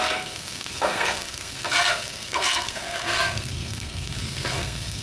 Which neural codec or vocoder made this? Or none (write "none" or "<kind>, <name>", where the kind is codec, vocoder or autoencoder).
codec, SNAC